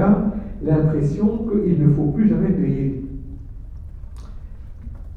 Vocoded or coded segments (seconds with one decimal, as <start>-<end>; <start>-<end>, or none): 0.9-1.8